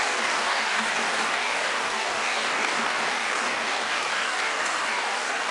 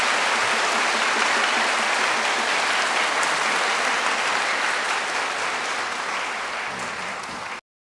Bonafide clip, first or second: second